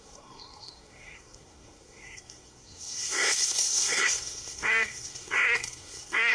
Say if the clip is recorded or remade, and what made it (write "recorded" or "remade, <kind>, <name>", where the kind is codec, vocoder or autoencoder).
remade, codec, SNAC